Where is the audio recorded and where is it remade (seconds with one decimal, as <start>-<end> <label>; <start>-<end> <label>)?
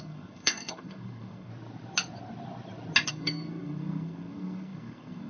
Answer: 0.0-1.5 remade; 1.5-3.1 recorded; 3.1-5.3 remade